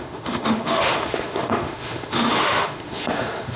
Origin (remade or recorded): remade